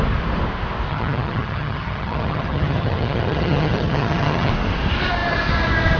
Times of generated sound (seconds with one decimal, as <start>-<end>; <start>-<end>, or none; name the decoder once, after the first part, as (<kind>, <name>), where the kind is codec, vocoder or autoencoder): 0.9-4.5 (vocoder, HiFi-GAN)